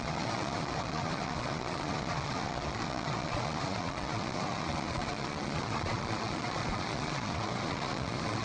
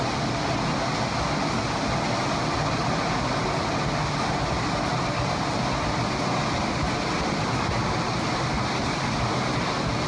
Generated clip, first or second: first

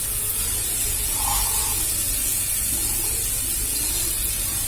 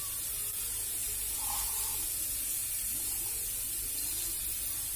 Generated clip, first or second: first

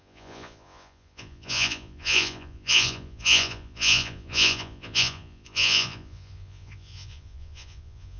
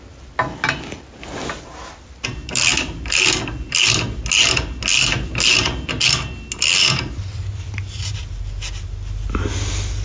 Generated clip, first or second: first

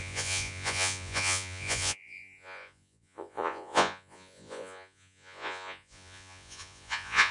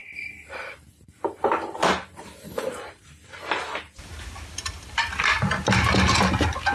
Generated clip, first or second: first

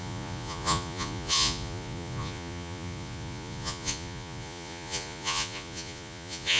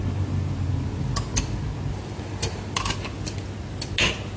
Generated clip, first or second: first